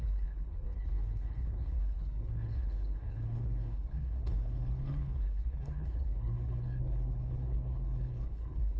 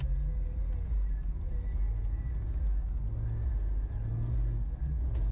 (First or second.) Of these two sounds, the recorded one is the second